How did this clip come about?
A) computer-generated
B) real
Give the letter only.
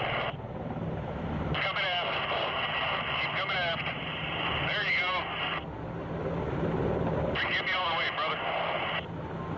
B